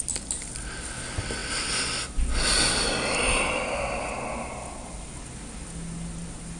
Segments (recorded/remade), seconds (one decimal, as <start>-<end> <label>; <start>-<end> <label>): 0.0-6.6 recorded